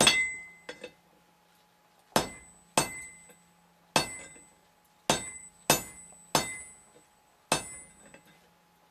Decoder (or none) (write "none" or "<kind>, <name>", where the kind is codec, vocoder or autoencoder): none